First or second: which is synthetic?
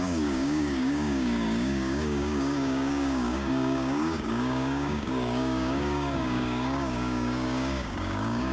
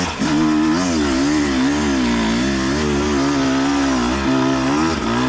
first